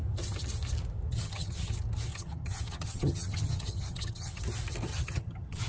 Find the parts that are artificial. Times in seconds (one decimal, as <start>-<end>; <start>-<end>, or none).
1.1-1.7; 2.1-4.4; 4.9-5.7

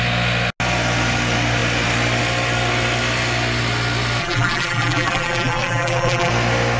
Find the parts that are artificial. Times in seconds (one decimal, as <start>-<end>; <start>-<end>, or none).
4.2-6.3

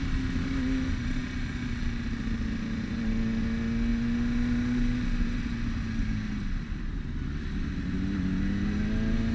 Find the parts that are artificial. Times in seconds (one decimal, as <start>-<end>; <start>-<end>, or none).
none

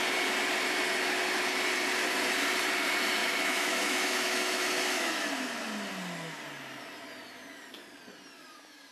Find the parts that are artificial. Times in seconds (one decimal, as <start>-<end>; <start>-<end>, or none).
3.2-5.3